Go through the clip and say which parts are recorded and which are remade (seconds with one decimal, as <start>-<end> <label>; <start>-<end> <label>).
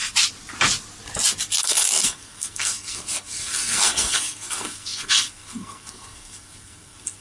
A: 0.0-1.6 recorded; 1.6-7.2 remade